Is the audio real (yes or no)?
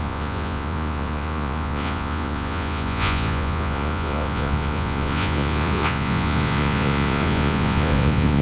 no